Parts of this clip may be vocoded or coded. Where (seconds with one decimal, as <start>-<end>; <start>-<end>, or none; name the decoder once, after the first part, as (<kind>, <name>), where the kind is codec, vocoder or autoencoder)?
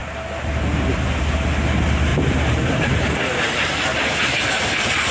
1.2-5.1 (vocoder, BigVGAN v2)